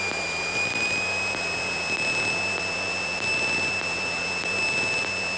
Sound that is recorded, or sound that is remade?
recorded